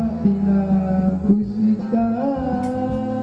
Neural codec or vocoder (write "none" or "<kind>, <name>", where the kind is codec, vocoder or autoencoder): none